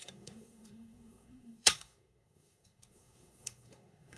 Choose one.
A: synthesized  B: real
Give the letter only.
A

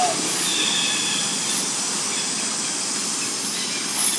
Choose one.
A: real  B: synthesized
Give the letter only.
A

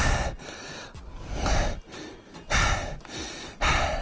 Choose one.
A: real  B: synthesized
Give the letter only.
A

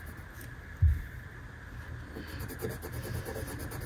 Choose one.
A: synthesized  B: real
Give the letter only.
B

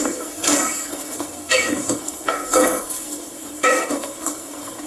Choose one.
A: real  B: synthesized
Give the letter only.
B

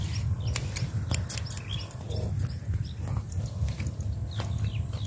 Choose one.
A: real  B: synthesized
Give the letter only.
A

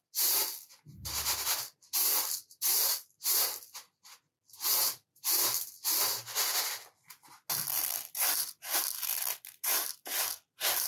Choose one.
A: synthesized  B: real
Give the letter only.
B